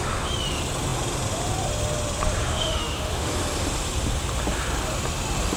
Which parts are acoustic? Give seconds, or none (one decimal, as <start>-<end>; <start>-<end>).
0.0-2.4; 3.3-5.6